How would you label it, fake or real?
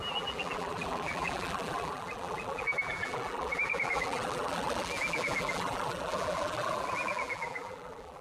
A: fake